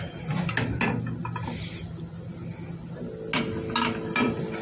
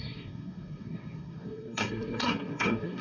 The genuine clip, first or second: first